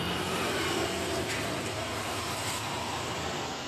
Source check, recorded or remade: remade